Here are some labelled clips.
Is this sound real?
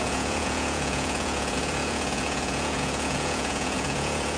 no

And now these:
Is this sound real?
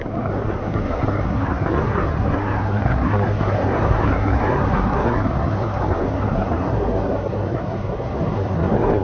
no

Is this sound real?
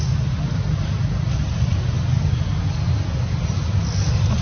yes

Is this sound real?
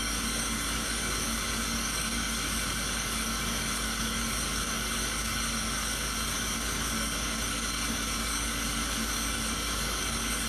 no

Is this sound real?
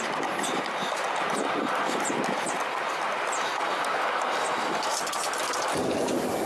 yes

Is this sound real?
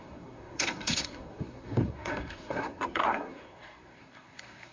no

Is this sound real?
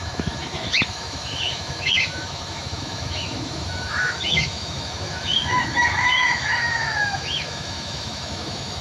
no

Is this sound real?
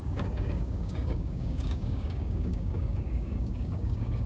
no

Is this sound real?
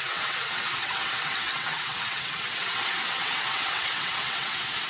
no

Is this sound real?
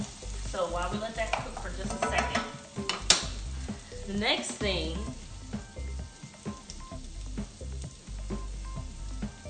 yes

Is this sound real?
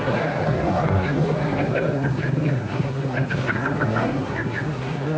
no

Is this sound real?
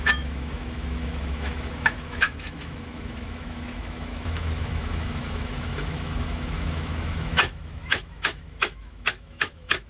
no